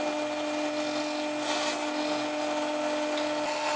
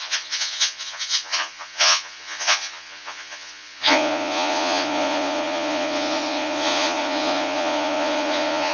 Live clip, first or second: first